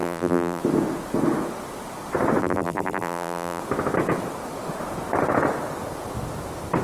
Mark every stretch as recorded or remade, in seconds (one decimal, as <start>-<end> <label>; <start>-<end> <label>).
0.0-0.6 remade; 0.6-2.4 recorded; 2.4-3.6 remade; 3.6-6.8 recorded

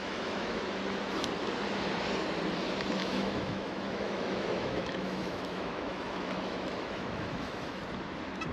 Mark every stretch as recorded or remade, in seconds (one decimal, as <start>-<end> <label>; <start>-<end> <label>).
0.0-0.6 remade; 0.6-3.0 recorded; 3.0-7.8 remade; 7.8-8.5 recorded

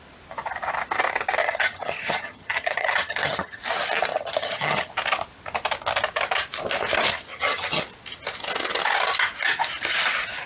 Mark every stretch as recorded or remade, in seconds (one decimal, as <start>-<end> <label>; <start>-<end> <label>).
0.0-1.4 recorded; 1.4-3.6 remade; 3.6-4.1 recorded; 4.1-4.9 remade; 4.9-7.3 recorded; 7.3-7.8 remade; 7.8-10.5 recorded

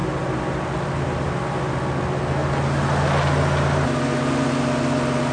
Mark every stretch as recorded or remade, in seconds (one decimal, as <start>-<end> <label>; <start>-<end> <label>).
0.0-5.3 recorded

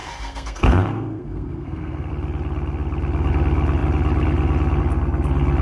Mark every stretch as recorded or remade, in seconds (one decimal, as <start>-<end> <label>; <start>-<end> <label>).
0.0-2.1 remade; 2.1-5.6 recorded

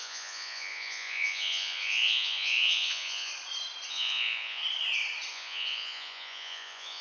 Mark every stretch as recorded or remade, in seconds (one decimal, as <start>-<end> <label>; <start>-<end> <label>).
0.0-3.3 remade; 3.3-3.9 recorded; 3.9-4.6 remade; 4.6-5.3 recorded; 5.3-7.0 remade

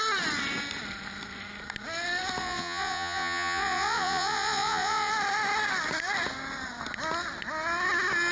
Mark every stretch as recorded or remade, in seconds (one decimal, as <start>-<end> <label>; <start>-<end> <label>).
0.0-2.4 recorded; 2.4-5.1 remade; 5.1-8.3 recorded